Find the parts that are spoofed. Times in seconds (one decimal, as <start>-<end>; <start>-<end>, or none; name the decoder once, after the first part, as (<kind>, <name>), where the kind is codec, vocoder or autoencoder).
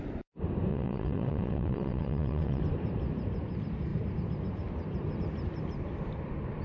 0.7-2.6 (vocoder, WaveNeXt)